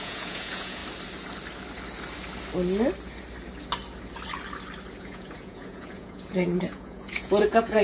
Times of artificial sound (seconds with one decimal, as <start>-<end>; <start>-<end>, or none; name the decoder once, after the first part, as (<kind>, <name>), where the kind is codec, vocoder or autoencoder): 0.0-0.8 (vocoder, Vocos); 5.0-7.8

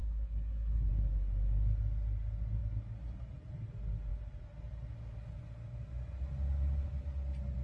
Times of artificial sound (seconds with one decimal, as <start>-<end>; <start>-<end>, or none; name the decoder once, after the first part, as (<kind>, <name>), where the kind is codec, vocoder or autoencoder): 0.0-0.9 (codec, SNAC)

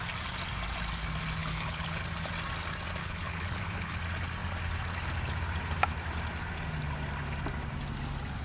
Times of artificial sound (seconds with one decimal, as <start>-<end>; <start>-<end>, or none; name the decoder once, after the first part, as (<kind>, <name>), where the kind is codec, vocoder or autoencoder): 1.4-2.0 (codec, HILCodec); 3.0-4.0

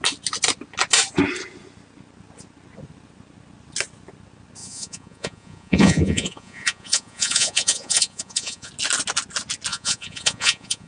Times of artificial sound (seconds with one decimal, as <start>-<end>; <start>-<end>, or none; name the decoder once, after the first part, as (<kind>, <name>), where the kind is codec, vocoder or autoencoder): 4.6-8.7 (vocoder, Vocos); 9.7-10.9